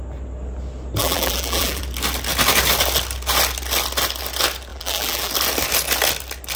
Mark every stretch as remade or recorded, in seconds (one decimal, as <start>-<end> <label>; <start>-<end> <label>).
0.0-1.0 recorded; 1.0-1.8 remade; 1.8-4.7 recorded; 4.7-5.3 remade; 5.3-6.6 recorded